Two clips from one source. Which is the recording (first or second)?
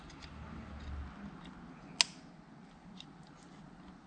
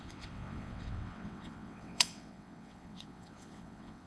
first